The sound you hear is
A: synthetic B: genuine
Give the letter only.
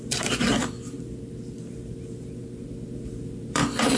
A